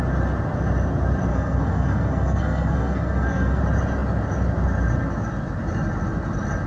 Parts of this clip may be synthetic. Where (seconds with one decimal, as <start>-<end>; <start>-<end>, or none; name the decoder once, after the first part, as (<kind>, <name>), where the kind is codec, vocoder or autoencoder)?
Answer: 1.3-3.6 (codec, SNAC)